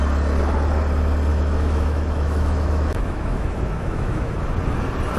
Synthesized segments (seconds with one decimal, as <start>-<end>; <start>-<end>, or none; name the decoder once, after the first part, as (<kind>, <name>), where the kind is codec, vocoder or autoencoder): 1.3-4.4 (autoencoder, DAC-VAE)